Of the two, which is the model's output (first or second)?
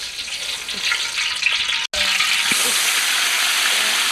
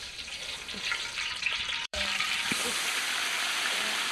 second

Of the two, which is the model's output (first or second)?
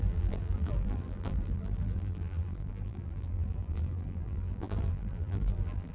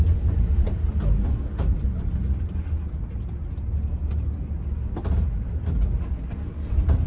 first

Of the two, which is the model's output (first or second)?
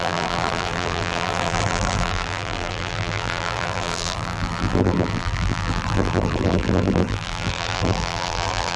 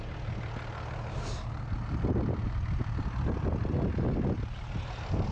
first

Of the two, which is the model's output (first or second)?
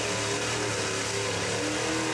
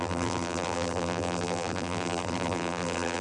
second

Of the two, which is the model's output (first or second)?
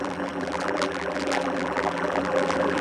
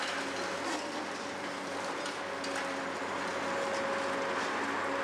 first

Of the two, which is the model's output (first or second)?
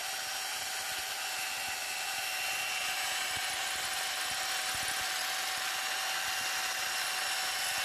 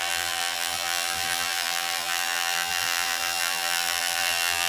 second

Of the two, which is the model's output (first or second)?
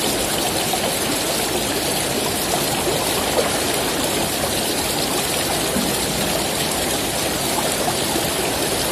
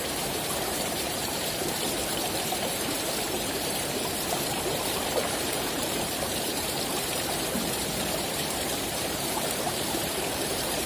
second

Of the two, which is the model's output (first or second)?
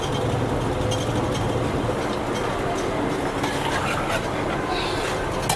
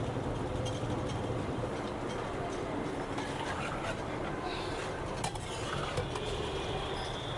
second